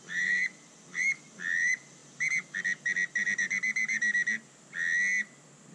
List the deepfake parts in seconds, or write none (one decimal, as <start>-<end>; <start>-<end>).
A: 0.0-2.0